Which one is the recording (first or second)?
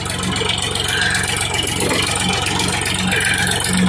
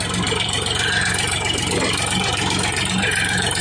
first